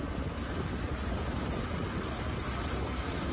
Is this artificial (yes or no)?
no